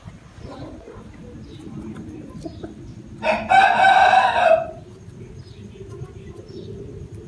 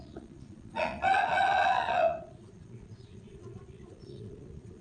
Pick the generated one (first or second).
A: second